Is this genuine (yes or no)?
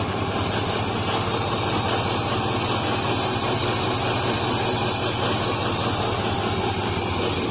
yes